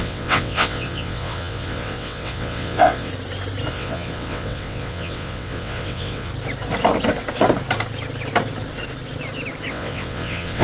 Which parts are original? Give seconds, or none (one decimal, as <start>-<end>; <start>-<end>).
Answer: 3.1-3.7; 6.3-9.7